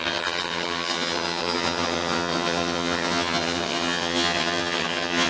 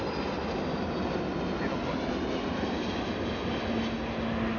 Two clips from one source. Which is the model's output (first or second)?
first